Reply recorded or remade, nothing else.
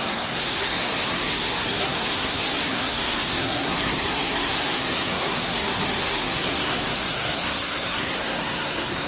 remade